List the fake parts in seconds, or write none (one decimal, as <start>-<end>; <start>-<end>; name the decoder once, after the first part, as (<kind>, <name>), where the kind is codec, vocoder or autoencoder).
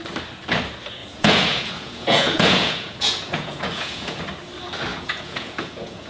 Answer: 1.0-4.2 (vocoder, Vocos); 4.9-6.1